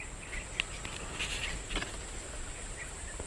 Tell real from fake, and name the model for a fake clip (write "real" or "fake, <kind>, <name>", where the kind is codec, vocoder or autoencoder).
real